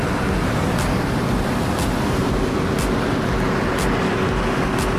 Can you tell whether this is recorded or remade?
recorded